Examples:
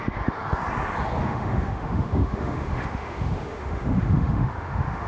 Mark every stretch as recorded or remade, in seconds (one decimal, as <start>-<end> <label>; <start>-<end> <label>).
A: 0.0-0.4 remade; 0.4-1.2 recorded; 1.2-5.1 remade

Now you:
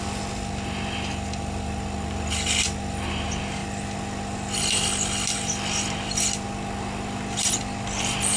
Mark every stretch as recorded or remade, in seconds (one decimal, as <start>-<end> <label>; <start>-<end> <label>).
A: 0.0-8.4 recorded

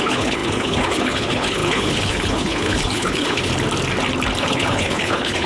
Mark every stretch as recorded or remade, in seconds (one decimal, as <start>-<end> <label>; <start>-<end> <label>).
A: 0.0-3.5 remade; 3.5-4.4 recorded; 4.4-5.5 remade

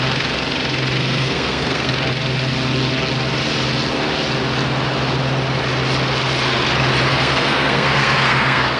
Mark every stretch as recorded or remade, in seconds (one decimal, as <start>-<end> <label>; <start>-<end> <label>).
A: 0.0-1.0 recorded; 1.0-1.9 remade; 1.9-7.1 recorded; 7.1-8.8 remade